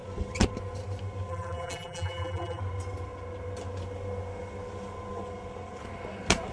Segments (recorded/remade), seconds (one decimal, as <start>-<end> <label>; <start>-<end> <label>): 0.0-1.3 recorded; 1.3-2.6 remade; 2.6-6.5 recorded